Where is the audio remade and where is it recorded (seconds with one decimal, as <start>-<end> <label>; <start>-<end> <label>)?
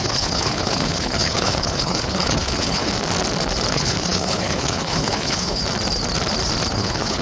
0.0-2.9 remade; 2.9-3.7 recorded; 3.7-5.6 remade; 5.6-6.7 recorded; 6.7-7.2 remade